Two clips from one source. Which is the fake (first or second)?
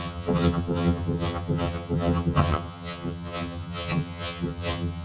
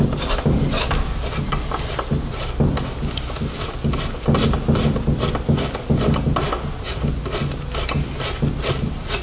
first